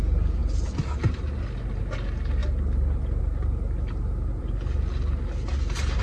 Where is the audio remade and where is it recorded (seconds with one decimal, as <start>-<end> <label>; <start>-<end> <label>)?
0.0-6.0 recorded